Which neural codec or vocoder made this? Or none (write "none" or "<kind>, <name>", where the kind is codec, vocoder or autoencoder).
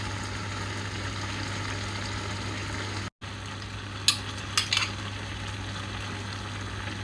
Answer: none